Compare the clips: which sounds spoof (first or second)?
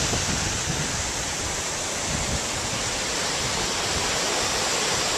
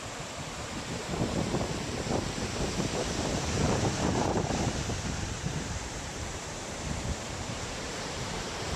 second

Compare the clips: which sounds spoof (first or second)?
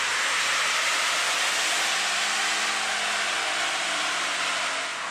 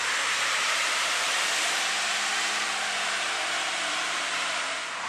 second